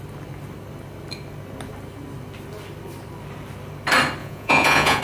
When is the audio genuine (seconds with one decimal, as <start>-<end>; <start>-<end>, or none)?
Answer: 0.0-4.2